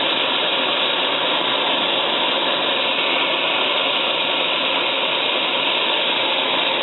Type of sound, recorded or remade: recorded